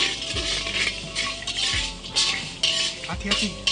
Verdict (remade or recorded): recorded